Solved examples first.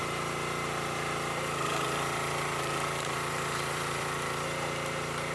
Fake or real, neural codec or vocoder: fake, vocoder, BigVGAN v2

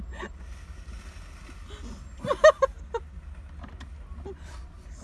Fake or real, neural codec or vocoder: real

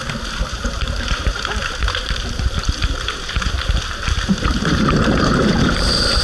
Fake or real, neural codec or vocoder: fake, vocoder, BigVGAN v2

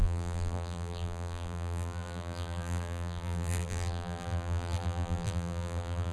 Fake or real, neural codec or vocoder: fake, vocoder, BigVGAN v2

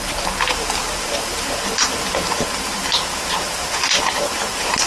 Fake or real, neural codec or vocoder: fake, vocoder, BigVGAN v2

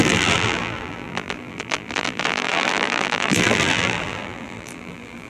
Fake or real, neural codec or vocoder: fake, vocoder, BigVGAN v2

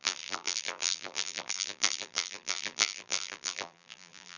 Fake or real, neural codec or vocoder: fake, vocoder, BigVGAN v2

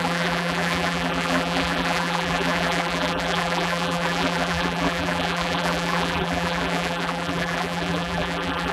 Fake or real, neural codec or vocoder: fake, vocoder, BigVGAN v2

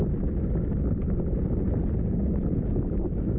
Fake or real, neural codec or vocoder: real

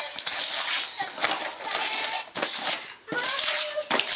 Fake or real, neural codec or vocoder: fake, vocoder, BigVGAN v2